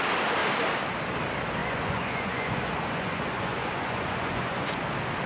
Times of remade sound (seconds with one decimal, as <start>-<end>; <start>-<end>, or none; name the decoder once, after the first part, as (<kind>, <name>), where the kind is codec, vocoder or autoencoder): 1.6-4.8 (vocoder, Vocos)